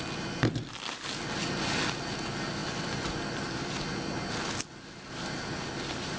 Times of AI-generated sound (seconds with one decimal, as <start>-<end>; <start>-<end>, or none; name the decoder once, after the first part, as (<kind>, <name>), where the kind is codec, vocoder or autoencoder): none